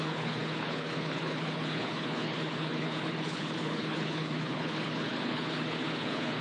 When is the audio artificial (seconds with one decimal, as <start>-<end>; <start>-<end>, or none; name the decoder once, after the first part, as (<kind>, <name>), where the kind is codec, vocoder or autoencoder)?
0.0-6.4 (codec, HILCodec)